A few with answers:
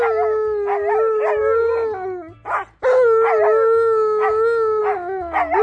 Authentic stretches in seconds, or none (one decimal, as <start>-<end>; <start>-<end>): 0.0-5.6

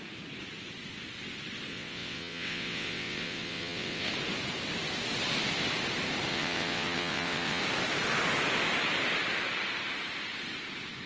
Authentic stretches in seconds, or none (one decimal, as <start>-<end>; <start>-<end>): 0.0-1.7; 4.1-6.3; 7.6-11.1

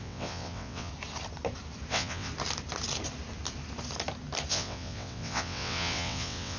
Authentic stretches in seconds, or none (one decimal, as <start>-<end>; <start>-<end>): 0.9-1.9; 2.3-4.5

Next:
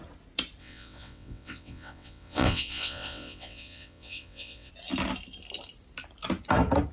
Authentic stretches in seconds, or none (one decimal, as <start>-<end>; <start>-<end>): 0.0-0.6; 4.7-6.9